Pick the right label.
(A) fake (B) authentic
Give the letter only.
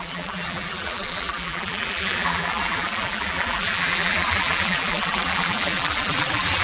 A